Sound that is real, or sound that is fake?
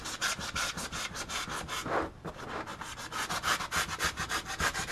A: real